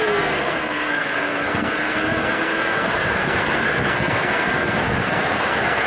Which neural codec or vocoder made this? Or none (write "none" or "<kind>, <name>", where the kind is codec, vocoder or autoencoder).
codec, SNAC